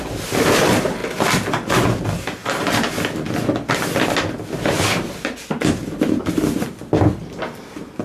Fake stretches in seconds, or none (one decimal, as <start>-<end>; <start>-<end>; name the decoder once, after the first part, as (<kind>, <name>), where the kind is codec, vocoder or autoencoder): none